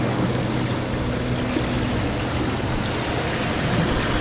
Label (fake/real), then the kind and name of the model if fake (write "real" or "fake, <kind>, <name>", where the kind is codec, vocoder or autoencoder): real